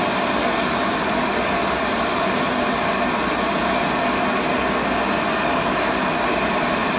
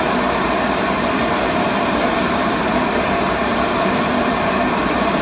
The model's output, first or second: second